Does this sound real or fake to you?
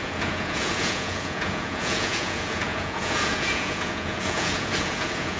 fake